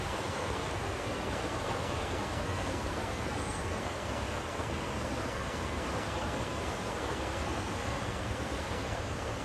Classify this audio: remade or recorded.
remade